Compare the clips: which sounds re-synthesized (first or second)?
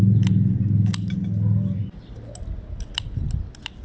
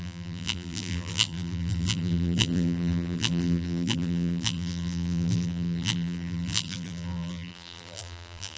second